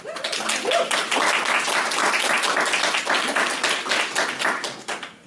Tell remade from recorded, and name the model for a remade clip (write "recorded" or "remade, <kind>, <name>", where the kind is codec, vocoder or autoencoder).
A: recorded